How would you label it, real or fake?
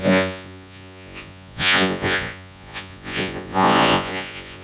fake